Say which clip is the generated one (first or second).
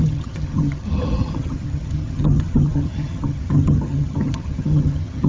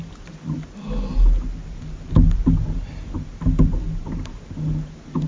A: first